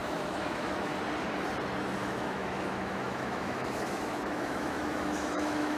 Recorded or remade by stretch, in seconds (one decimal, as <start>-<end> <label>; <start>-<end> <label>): 0.0-0.9 remade; 0.9-2.0 recorded; 2.0-5.8 remade